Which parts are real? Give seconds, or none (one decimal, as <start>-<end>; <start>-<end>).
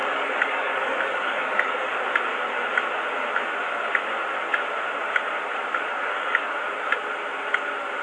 1.9-5.9; 6.6-8.0